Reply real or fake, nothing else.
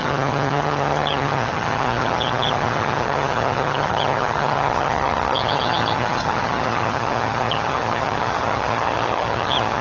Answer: fake